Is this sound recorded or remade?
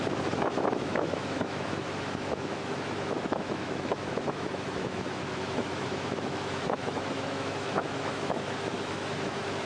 remade